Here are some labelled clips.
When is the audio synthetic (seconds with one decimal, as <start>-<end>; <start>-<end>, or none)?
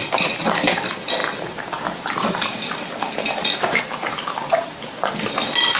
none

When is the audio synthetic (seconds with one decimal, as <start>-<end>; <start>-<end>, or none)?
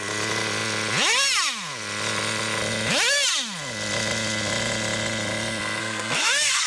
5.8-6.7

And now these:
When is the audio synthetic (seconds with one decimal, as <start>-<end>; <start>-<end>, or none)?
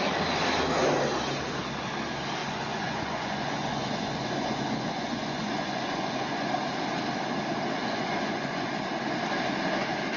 2.4-6.5; 7.8-8.7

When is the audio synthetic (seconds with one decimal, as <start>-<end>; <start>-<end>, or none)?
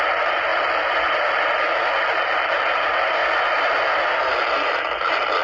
none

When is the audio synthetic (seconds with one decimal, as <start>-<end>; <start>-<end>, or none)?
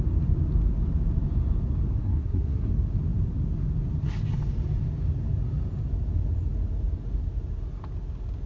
2.0-2.7